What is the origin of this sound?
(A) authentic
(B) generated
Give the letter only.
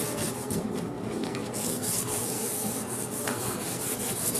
B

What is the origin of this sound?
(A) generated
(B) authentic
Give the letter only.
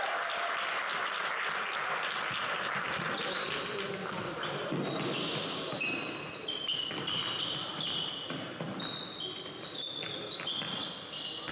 B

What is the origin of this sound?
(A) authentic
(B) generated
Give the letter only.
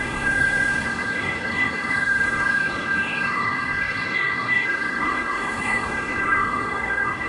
B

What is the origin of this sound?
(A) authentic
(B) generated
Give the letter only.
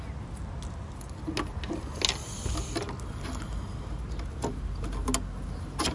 A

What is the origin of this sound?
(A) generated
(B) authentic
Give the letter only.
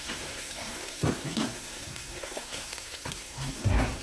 A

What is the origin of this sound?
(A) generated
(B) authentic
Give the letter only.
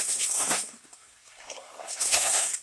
A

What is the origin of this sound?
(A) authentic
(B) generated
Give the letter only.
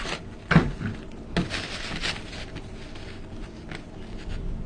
A